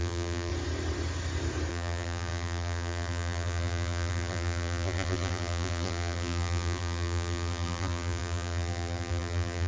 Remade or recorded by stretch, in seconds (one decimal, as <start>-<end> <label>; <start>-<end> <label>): 0.0-0.5 remade; 0.5-1.7 recorded; 1.7-9.7 remade